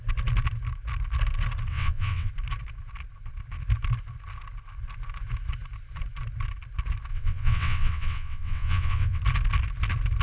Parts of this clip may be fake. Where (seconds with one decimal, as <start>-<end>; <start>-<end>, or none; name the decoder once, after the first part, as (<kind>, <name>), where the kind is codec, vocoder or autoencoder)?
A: 1.7-2.3 (vocoder, WaveNeXt); 7.1-9.2